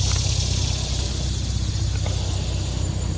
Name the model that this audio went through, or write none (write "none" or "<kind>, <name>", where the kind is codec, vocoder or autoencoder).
none